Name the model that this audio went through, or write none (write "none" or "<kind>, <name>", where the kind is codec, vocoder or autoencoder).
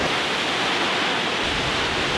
none